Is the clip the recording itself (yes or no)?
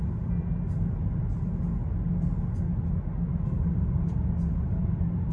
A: yes